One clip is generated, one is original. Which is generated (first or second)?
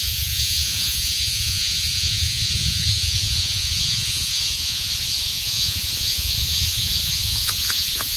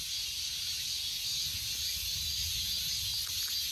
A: first